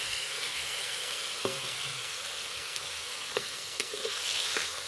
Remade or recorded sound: remade